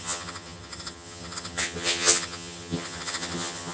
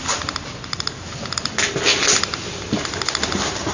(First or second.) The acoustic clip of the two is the second